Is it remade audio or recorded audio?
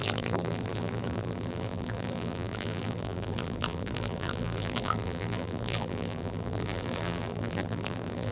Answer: remade